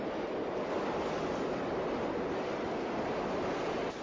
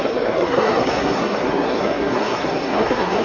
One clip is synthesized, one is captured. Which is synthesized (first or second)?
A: second